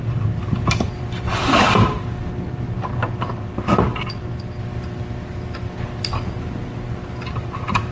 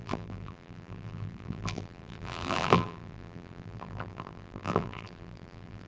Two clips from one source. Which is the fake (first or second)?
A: second